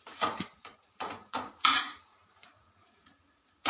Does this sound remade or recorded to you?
remade